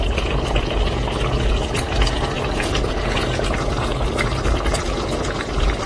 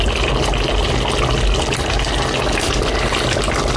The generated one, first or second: first